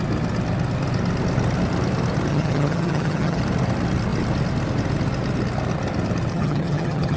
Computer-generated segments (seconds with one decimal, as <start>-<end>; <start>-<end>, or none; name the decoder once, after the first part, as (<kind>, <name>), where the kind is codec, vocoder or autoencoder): 2.3-3.4 (vocoder, HiFi-GAN); 6.3-7.2